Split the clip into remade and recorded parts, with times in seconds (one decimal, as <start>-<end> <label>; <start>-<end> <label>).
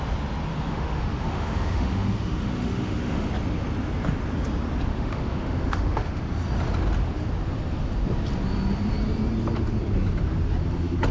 0.0-0.5 recorded; 0.5-3.3 remade; 3.3-4.9 recorded; 4.9-6.2 remade; 6.2-11.1 recorded